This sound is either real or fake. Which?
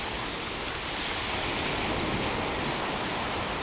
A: real